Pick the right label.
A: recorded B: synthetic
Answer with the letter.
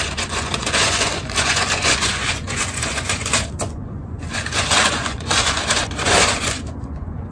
B